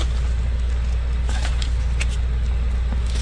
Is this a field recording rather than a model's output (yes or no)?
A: yes